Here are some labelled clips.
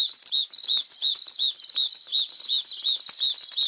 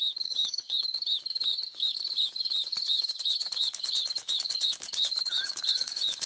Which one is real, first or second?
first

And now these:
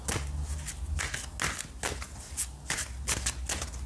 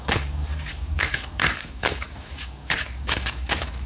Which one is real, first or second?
first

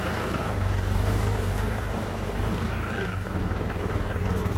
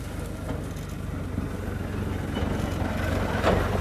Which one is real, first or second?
second